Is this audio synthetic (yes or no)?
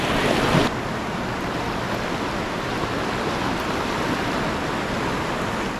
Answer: no